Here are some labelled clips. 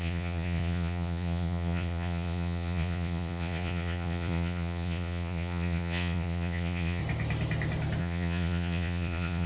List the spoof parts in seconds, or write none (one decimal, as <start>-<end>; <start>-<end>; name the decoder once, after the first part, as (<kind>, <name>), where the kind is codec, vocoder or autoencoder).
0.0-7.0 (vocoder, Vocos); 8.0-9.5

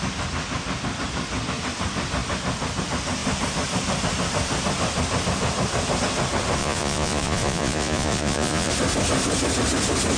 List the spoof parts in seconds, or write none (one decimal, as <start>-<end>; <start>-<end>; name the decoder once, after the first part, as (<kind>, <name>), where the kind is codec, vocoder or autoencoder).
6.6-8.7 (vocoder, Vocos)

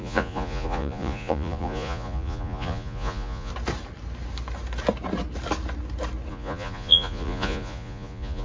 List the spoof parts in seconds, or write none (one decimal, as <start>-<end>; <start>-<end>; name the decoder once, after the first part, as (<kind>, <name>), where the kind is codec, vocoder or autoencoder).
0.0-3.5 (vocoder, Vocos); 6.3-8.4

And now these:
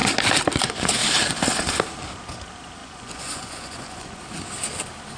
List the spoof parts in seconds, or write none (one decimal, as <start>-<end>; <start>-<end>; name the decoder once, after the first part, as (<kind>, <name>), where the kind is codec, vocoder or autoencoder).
2.8-4.2 (vocoder, Vocos)